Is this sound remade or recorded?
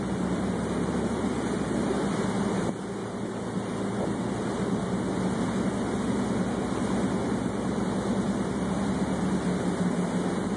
recorded